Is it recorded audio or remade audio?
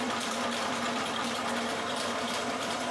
remade